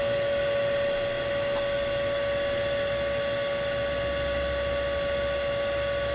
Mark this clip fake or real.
real